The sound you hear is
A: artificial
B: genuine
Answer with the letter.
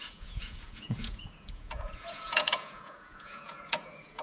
A